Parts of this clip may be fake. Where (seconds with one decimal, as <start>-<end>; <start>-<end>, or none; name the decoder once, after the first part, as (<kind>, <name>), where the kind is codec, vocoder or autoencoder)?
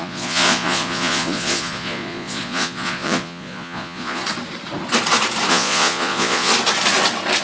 0.0-4.2 (vocoder, Vocos); 5.5-6.5